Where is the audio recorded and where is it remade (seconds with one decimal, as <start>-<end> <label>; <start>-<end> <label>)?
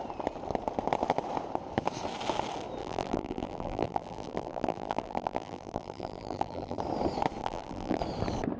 0.0-2.8 recorded; 2.8-6.8 remade; 6.8-7.4 recorded; 7.4-8.0 remade; 8.0-8.6 recorded